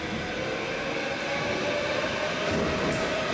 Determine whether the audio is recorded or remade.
recorded